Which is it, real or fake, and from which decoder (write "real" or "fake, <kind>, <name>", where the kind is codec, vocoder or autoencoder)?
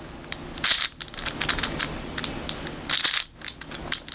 real